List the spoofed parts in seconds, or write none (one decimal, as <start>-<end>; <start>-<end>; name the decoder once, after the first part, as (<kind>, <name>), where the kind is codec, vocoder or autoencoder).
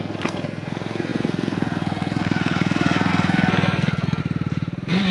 0.0-4.2 (codec, SNAC)